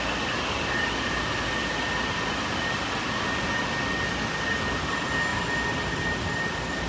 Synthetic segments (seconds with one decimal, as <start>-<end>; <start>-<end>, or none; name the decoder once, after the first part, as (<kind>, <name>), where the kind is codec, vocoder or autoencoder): none